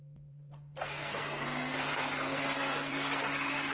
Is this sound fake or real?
fake